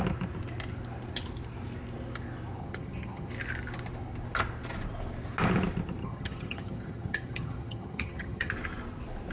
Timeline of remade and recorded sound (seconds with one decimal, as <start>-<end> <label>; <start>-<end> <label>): 0.0-2.6 recorded; 2.6-3.3 remade; 3.3-6.0 recorded; 6.0-8.5 remade; 8.5-9.3 recorded